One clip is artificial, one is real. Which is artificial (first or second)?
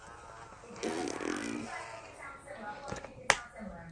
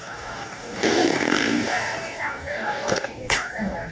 second